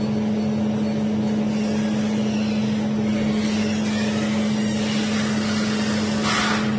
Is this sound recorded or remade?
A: recorded